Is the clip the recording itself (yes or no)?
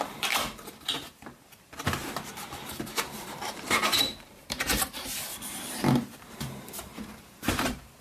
no